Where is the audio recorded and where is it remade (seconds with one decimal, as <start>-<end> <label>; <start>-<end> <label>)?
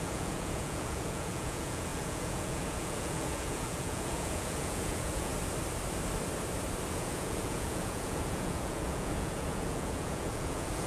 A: 0.0-5.3 remade; 5.3-6.9 recorded; 6.9-10.9 remade